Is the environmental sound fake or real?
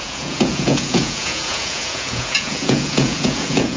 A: fake